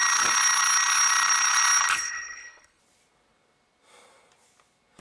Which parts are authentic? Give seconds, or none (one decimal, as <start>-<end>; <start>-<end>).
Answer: 0.0-1.9; 2.8-5.0